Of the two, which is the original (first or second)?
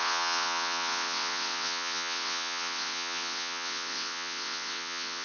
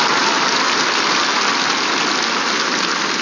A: second